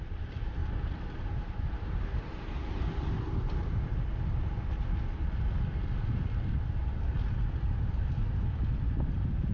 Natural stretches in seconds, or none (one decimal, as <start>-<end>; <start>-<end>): 0.6-1.2; 3.9-9.1